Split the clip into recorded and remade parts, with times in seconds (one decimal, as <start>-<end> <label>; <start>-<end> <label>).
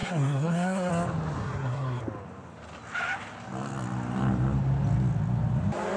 0.0-0.9 remade; 0.9-1.4 recorded; 1.4-2.0 remade; 2.0-6.0 recorded